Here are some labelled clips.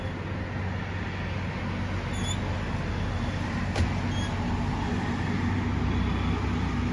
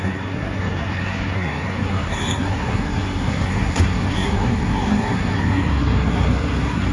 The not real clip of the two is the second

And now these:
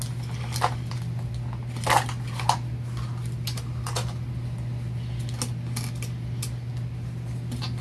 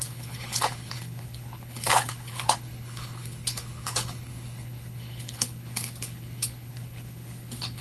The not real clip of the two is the second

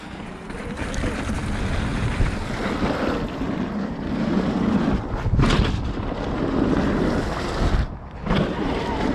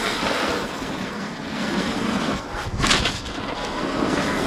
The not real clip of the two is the second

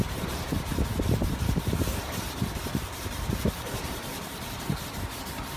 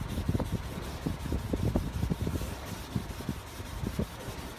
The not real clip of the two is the first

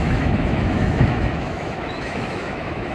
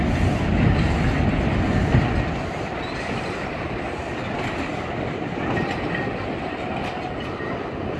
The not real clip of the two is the first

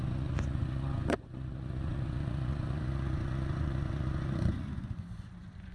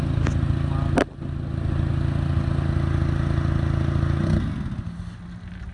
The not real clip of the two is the first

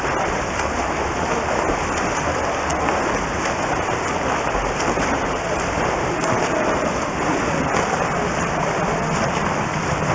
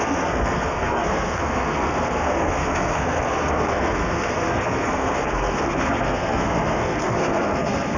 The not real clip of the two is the second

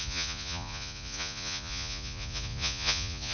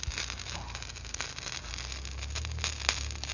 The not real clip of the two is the first